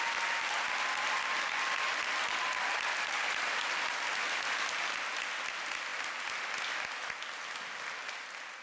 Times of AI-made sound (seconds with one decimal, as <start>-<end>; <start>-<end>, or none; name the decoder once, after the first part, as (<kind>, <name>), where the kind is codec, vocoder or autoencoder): none